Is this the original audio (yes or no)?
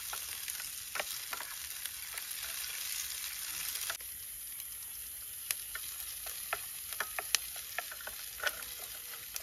yes